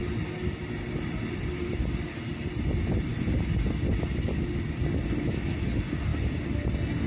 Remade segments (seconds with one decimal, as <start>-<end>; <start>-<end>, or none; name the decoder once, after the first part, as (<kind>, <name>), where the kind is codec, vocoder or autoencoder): none